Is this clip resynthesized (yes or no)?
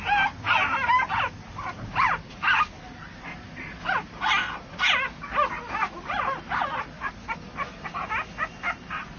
no